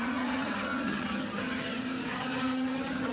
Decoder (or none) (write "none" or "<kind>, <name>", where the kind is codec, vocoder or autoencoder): vocoder, HiFi-GAN